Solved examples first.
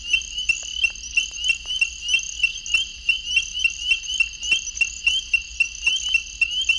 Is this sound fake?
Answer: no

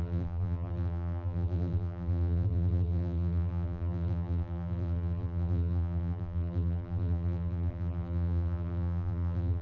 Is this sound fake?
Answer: yes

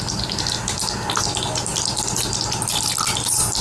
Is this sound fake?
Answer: no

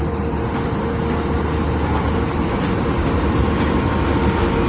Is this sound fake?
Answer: no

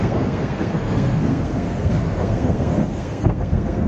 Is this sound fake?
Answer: yes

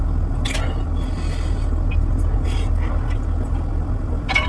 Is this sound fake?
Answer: no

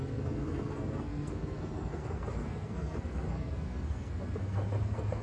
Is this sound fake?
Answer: yes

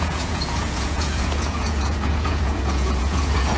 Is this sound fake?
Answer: yes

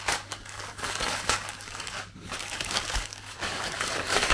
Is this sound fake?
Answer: yes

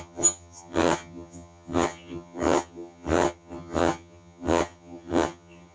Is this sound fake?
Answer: yes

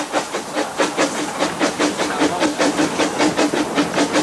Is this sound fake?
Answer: no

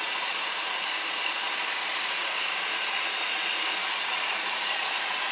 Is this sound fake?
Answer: yes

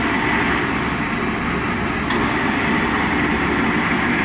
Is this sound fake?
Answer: no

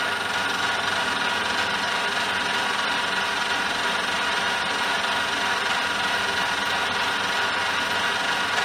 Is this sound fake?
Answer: no